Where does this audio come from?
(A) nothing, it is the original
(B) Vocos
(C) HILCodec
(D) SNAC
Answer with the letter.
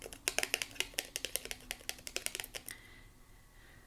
A